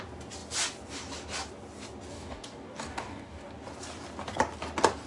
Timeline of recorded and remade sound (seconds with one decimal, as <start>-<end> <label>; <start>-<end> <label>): 0.0-2.1 recorded; 2.1-3.5 remade; 3.5-5.1 recorded